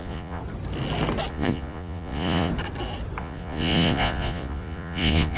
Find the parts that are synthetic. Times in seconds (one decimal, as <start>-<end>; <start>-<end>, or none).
0.0-0.4; 1.3-2.5; 3.2-5.4